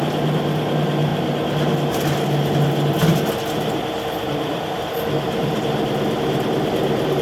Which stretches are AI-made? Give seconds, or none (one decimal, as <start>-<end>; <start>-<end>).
none